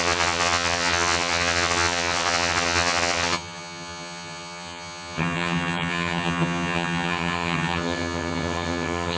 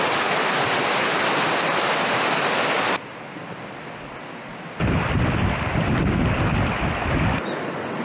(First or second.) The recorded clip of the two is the second